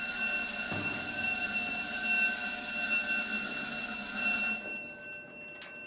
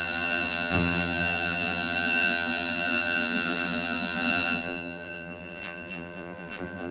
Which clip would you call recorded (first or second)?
first